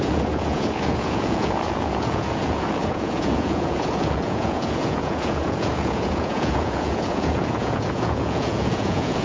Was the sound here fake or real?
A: fake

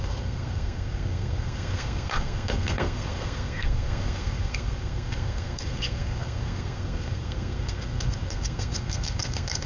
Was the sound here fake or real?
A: fake